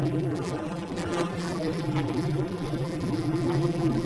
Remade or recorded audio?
remade